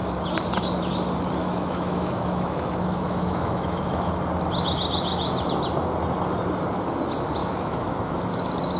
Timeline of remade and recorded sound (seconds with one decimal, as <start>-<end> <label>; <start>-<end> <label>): 0.0-1.4 recorded; 1.4-4.1 remade; 4.1-7.4 recorded; 7.4-8.2 remade; 8.2-8.8 recorded